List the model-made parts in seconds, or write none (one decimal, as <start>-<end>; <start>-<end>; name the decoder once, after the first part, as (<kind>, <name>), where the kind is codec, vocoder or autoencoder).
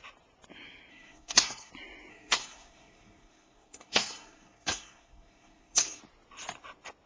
0.9-1.7 (codec, SNAC); 2.1-6.0